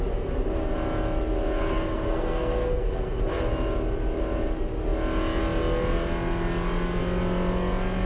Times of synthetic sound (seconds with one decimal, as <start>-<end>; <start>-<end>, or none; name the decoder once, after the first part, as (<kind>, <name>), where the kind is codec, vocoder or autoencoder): 1.6-3.2 (codec, SNAC)